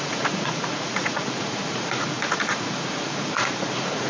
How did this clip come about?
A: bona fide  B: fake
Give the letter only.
B